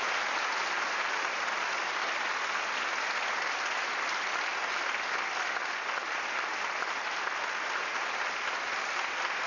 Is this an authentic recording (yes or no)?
yes